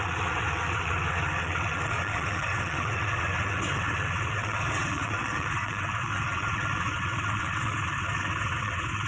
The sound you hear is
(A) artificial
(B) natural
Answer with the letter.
A